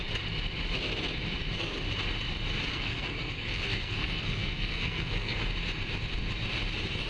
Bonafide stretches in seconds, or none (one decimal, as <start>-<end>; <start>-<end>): 0.0-2.7; 5.4-7.1